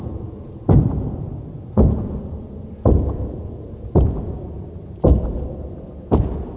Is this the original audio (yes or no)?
no